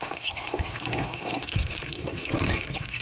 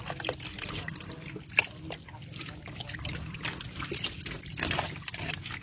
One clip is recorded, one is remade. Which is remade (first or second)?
first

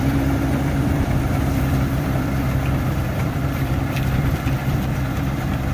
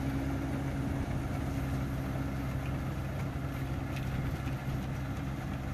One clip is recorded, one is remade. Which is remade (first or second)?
first